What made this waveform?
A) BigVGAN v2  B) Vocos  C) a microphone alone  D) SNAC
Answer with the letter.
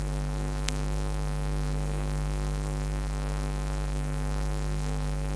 D